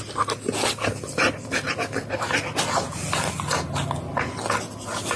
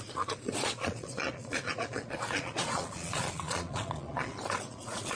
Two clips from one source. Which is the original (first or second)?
first